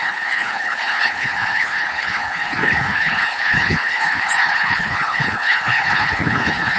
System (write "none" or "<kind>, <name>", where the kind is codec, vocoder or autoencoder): codec, HILCodec